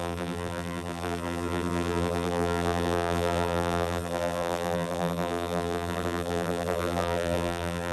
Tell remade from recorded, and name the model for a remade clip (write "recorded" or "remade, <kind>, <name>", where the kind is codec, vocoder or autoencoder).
remade, vocoder, BigVGAN v2